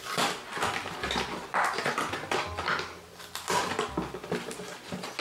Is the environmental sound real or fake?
real